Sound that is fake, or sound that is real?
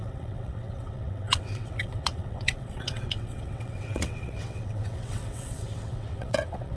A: fake